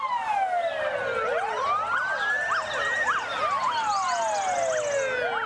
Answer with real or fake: real